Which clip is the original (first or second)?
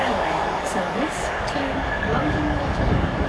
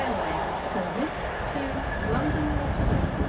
second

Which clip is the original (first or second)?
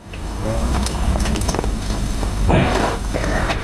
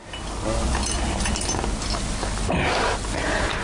second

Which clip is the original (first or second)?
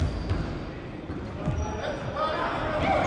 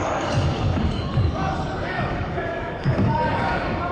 first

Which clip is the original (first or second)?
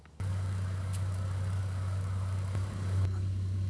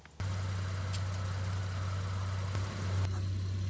second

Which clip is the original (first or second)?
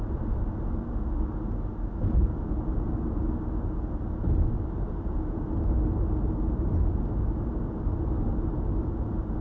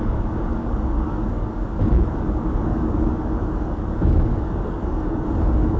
first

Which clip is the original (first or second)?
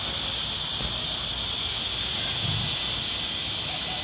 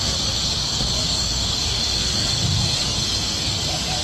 first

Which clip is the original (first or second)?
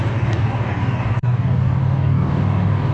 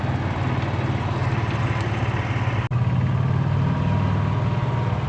second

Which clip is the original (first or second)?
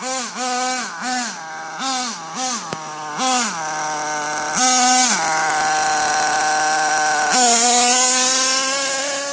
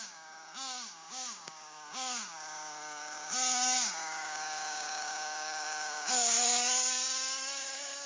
first